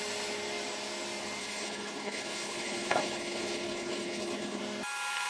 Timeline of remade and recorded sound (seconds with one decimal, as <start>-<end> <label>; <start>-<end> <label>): 0.0-1.4 recorded; 1.4-4.6 remade; 4.6-5.3 recorded